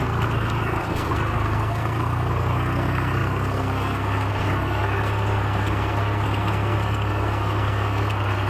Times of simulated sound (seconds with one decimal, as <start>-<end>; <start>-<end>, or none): 0.0-8.5